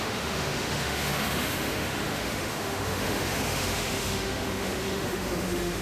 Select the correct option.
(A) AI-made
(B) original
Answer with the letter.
A